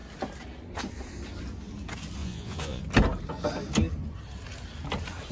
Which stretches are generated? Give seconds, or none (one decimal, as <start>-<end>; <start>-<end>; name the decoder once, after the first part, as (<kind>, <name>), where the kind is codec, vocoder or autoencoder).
2.2-2.8 (vocoder, Vocos)